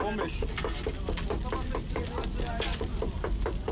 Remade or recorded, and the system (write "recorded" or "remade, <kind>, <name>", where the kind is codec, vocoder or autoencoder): recorded